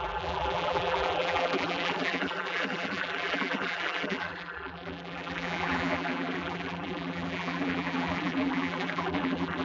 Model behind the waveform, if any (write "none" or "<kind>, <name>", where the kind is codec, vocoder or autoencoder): vocoder, BigVGAN v2